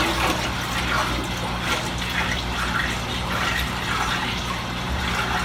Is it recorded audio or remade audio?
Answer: recorded